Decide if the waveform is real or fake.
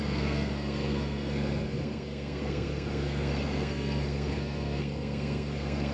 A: fake